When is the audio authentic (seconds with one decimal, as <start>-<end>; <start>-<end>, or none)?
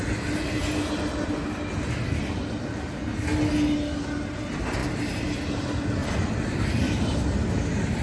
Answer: 0.0-6.0; 6.6-8.0